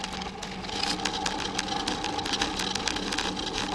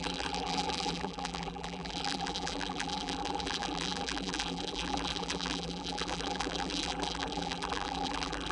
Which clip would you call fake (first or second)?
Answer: second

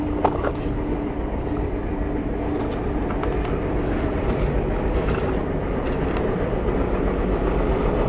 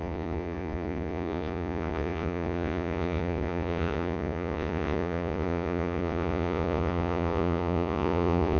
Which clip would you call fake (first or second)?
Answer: second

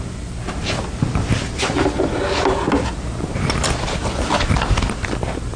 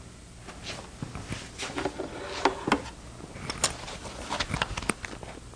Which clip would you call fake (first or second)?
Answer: first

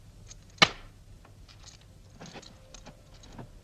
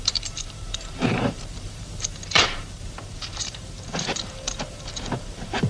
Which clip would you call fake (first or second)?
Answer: second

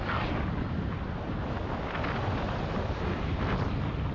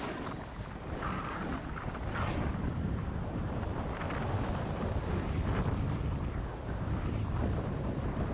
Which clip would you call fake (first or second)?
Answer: second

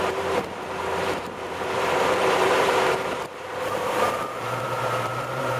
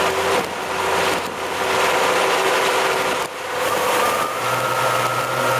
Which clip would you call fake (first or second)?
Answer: first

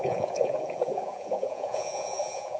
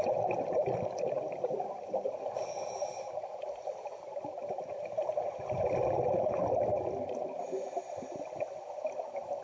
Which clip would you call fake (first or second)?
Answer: first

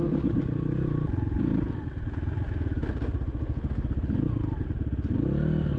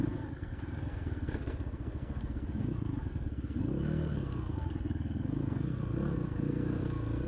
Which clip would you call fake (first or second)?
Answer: second